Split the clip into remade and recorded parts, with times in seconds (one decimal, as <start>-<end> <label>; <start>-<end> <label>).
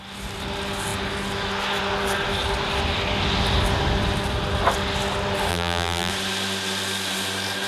0.0-5.5 recorded; 5.5-6.1 remade; 6.1-7.7 recorded